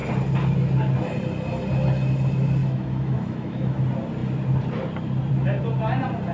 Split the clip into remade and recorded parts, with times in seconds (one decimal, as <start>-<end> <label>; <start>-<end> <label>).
0.0-2.6 recorded; 2.6-3.8 remade; 3.8-6.3 recorded